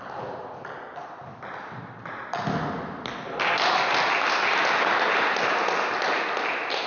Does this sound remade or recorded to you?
recorded